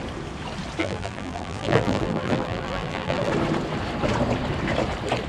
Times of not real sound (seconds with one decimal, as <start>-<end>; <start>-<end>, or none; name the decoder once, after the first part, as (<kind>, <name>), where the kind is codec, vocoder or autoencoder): 0.8-3.3 (vocoder, BigVGAN v2)